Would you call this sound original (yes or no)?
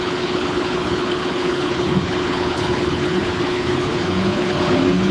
no